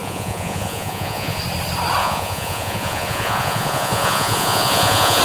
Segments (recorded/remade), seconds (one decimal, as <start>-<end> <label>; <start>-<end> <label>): 0.0-1.4 remade; 1.4-2.0 recorded; 2.0-5.2 remade